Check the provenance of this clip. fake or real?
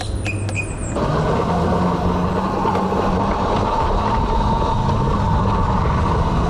real